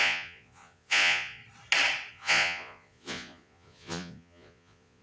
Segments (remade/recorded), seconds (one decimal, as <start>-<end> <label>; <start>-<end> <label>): 0.0-1.4 remade; 1.4-2.1 recorded; 2.1-5.0 remade